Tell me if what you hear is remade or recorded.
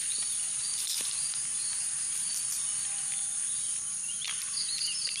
recorded